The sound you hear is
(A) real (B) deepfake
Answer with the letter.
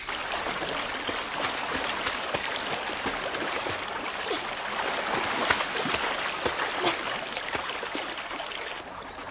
A